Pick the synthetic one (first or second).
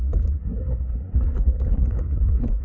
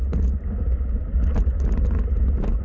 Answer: first